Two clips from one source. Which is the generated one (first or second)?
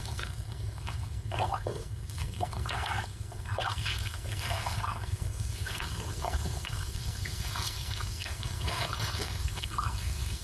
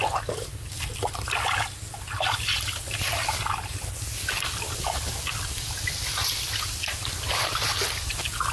first